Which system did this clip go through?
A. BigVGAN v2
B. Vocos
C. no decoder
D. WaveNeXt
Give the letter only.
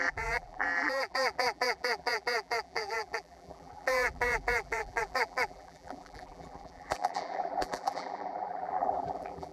A